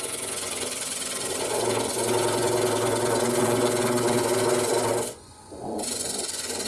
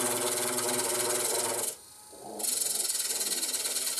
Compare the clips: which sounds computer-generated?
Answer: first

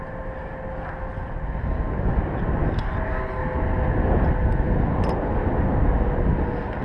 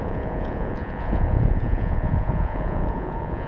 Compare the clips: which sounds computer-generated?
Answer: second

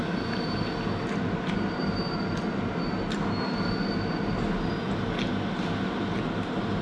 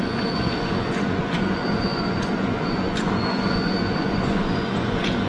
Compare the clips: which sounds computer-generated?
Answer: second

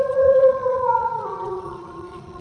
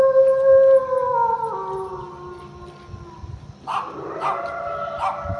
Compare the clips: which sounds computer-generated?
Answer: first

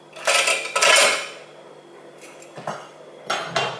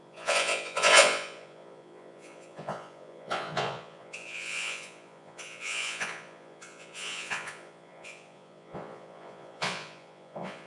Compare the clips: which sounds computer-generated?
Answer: second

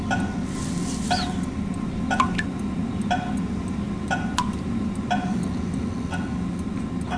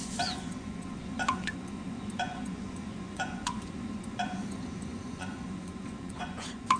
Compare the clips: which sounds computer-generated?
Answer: second